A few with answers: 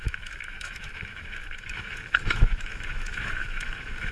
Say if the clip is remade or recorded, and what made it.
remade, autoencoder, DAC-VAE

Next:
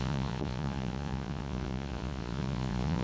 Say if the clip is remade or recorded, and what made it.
remade, vocoder, Vocos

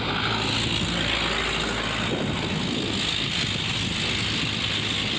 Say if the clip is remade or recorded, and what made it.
recorded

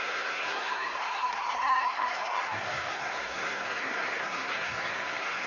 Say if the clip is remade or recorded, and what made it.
remade, codec, SNAC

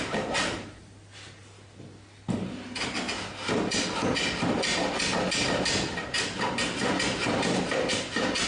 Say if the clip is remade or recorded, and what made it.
recorded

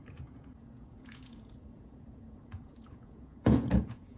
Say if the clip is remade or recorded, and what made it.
remade, vocoder, Vocos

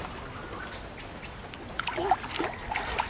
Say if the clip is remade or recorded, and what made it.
recorded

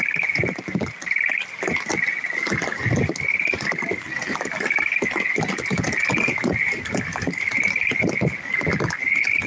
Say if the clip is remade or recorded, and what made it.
recorded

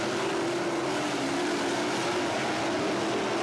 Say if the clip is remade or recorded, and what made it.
recorded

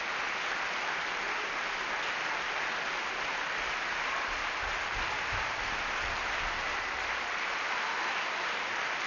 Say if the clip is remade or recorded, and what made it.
remade, vocoder, BigVGAN v2